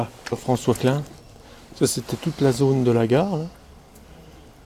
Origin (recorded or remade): recorded